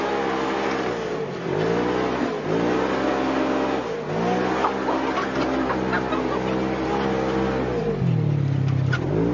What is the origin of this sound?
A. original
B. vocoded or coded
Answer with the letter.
A